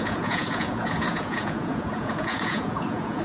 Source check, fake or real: fake